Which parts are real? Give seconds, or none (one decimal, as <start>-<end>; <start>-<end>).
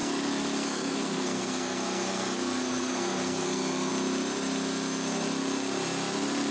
3.9-6.5